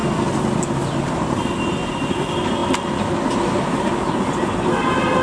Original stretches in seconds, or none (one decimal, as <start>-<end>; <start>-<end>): 0.0-5.2